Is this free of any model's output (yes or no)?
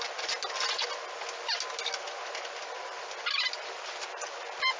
yes